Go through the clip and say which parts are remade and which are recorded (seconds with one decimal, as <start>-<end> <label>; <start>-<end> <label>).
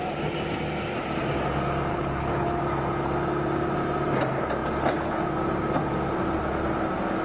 0.0-1.9 recorded; 1.9-2.6 remade; 2.6-7.2 recorded